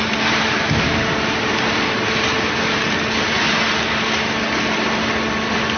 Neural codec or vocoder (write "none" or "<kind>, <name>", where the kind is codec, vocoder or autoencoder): none